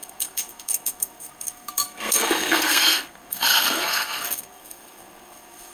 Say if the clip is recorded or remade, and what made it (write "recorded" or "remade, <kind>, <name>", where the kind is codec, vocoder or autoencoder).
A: remade, codec, SNAC